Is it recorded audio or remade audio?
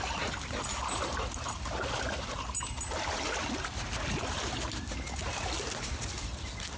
recorded